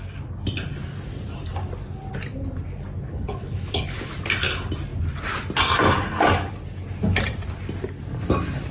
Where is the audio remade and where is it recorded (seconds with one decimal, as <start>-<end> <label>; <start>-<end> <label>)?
0.0-3.1 recorded; 3.1-4.1 remade; 4.1-8.7 recorded